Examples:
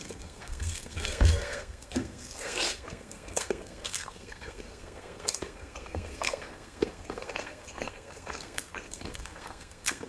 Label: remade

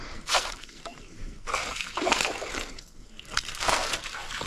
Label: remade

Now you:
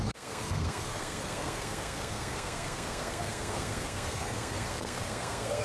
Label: remade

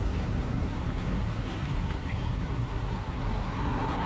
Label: remade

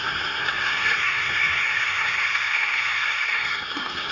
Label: remade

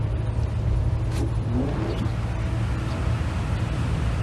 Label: recorded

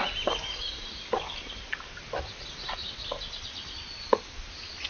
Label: recorded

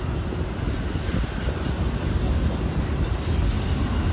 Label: recorded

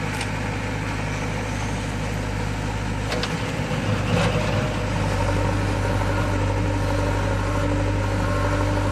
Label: recorded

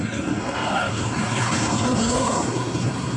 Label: remade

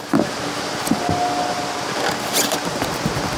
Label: recorded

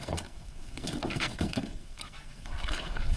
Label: remade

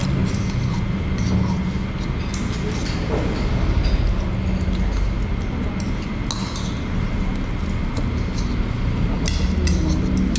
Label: recorded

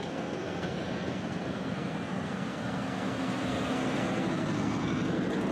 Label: remade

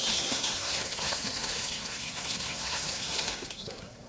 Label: remade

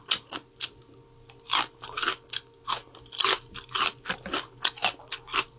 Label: recorded